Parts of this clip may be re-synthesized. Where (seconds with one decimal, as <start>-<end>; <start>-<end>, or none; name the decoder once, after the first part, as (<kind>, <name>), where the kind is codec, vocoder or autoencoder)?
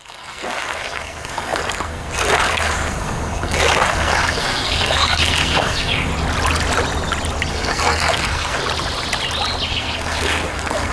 0.0-6.1 (codec, SNAC); 7.5-8.6; 9.7-10.9